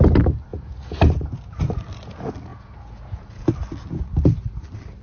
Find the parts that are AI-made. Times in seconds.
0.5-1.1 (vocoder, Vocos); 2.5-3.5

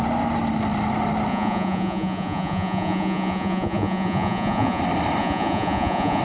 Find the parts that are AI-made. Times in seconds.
1.3-4.8 (vocoder, Vocos); 5.2-6.2

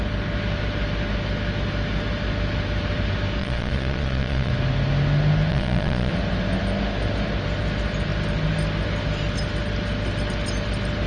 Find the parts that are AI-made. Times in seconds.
3.4-4.5 (vocoder, Vocos); 5.5-6.1

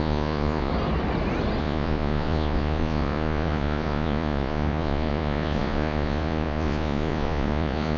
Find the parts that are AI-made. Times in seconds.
0.0-0.7 (vocoder, Vocos); 1.6-8.0

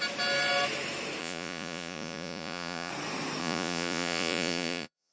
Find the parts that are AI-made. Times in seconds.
1.2-2.9 (vocoder, Vocos); 3.4-5.1